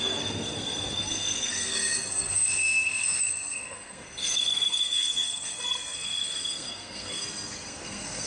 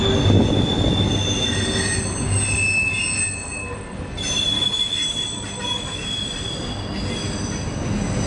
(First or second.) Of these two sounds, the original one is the second